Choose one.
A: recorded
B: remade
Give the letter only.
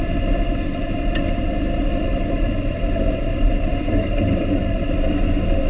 A